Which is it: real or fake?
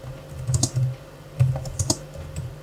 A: real